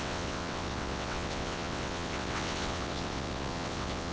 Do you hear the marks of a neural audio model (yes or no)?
yes